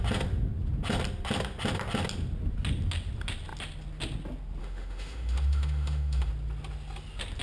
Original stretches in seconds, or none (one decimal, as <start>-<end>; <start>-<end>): 0.0-4.6; 6.3-7.4